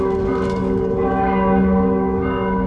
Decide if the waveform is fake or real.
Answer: fake